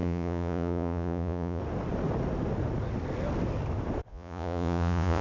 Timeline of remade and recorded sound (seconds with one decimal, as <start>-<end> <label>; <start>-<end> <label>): 0.0-1.6 remade; 1.6-4.1 recorded; 4.1-5.2 remade

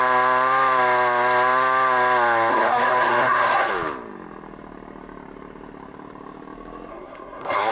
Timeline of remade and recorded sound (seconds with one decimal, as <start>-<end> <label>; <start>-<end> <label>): 0.0-2.5 recorded; 2.5-3.7 remade; 3.7-6.9 recorded; 6.9-7.7 remade

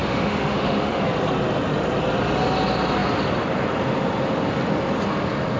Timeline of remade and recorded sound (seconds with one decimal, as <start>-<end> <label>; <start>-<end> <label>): 0.0-1.0 remade; 1.0-5.6 recorded

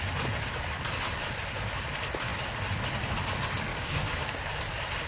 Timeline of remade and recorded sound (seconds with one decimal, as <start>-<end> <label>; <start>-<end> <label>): 0.0-3.7 recorded; 3.7-4.3 remade; 4.3-5.1 recorded